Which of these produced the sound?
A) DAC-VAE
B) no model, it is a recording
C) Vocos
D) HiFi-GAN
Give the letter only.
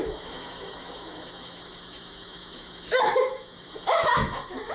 A